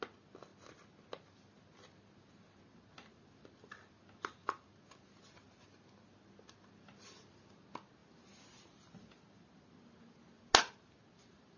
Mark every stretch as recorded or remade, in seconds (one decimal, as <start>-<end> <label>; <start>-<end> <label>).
0.0-11.6 recorded